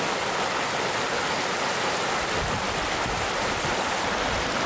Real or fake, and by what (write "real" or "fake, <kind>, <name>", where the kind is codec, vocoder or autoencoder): real